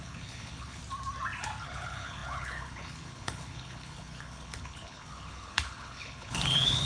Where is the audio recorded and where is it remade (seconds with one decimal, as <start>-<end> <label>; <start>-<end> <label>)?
0.0-0.8 remade; 0.8-1.6 recorded; 1.6-6.9 remade